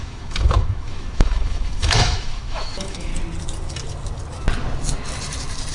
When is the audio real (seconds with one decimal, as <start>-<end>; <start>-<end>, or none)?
3.1-5.7